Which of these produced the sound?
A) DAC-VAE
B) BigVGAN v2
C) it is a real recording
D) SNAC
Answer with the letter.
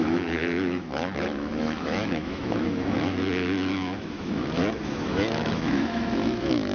A